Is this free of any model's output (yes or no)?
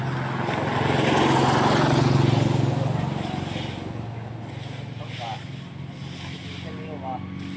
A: yes